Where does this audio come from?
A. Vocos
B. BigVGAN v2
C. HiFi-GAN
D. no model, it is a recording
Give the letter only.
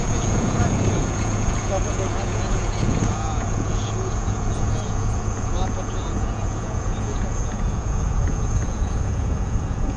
A